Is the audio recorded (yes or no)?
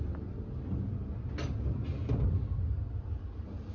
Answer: yes